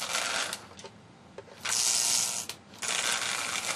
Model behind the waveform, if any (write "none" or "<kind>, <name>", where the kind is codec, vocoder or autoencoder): none